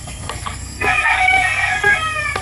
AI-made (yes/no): yes